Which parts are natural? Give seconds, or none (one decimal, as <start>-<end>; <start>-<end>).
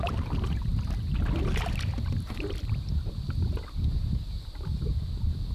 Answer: 0.0-5.5